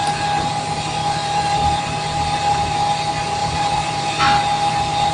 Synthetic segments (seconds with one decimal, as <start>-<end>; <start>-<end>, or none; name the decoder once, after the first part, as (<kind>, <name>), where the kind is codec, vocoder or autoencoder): 1.0-1.8 (vocoder, BigVGAN v2); 3.4-4.2